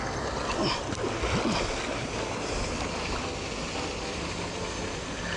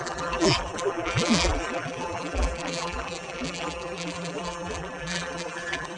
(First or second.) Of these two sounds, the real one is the first